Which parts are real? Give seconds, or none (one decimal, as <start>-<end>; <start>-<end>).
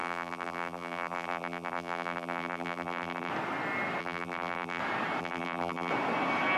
3.3-4.0; 4.8-5.2; 5.9-6.6